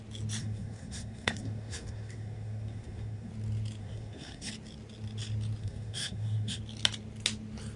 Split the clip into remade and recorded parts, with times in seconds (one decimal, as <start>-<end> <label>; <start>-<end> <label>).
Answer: 0.0-0.4 recorded; 0.4-3.3 remade; 3.3-3.8 recorded; 3.8-4.5 remade; 4.5-5.6 recorded; 5.6-6.6 remade; 6.6-7.8 recorded